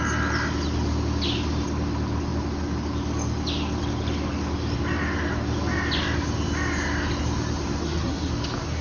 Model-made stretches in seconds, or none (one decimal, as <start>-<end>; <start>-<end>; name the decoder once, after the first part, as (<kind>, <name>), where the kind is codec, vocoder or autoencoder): 7.8-8.3 (codec, SNAC)